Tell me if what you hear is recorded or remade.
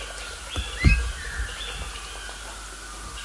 recorded